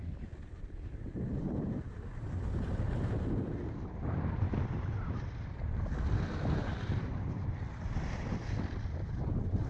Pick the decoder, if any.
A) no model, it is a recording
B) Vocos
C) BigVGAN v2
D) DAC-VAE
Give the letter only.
C